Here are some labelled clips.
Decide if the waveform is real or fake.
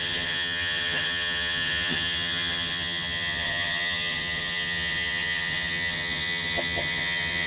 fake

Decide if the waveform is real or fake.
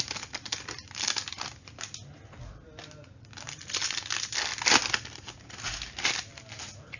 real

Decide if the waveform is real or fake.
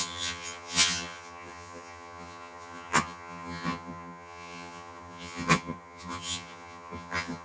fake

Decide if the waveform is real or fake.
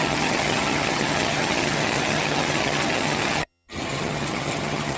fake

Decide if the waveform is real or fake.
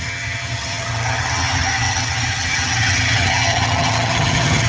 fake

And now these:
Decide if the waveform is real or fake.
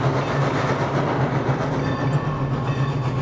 real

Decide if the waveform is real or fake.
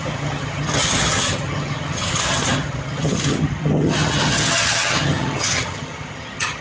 fake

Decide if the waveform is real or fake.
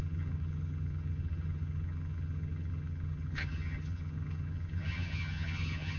fake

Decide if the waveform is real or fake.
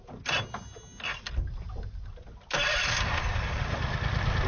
real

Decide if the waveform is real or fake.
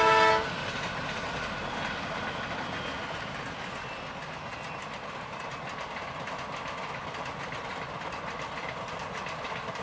real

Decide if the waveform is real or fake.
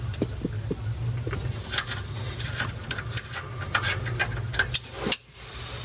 real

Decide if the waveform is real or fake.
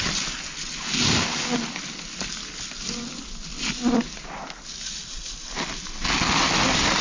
real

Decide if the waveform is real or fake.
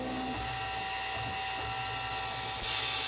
real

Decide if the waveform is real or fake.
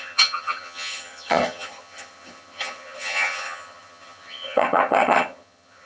fake